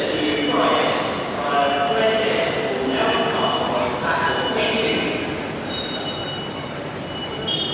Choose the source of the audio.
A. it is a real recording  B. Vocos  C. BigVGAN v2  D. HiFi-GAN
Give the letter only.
A